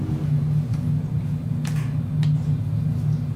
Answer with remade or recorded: recorded